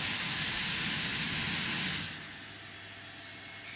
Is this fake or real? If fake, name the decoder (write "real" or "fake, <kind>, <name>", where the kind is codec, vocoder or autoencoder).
real